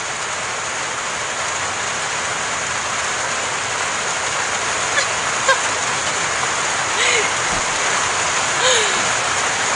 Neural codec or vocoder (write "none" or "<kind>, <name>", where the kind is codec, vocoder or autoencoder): none